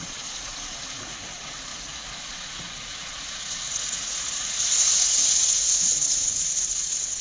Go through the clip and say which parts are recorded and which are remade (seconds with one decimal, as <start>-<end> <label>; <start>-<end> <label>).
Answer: 0.0-7.2 remade